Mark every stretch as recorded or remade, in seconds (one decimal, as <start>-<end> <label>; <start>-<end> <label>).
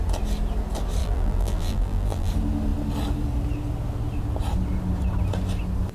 0.0-1.0 recorded; 1.0-2.3 remade; 2.3-5.9 recorded